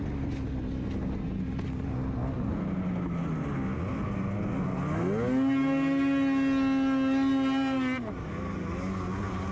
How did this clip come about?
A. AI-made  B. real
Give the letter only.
B